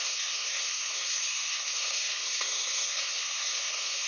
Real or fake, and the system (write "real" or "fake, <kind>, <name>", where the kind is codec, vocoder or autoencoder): fake, codec, SNAC